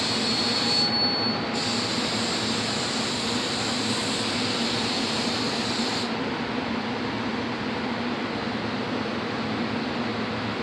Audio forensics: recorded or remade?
recorded